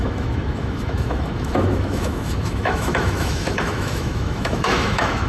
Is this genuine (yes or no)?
no